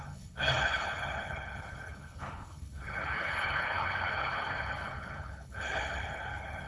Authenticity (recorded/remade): remade